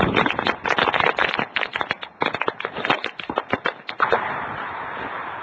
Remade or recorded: recorded